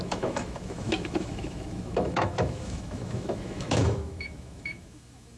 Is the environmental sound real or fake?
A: fake